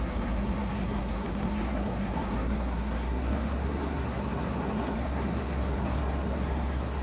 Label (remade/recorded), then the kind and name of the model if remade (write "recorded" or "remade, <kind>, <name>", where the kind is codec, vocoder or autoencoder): remade, codec, SNAC